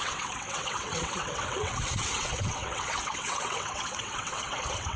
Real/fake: fake